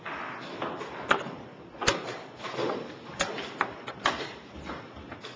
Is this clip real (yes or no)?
yes